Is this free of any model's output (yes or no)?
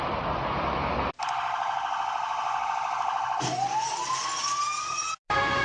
yes